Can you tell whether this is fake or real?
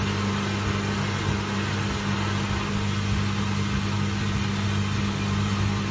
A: real